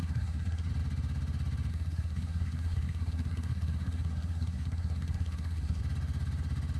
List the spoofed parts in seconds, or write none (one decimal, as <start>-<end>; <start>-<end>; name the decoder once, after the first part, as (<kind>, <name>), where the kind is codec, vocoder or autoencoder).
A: 0.0-0.7 (codec, SNAC); 1.7-5.8